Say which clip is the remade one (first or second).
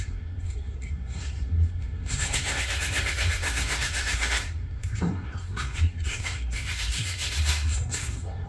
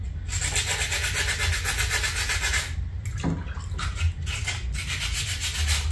first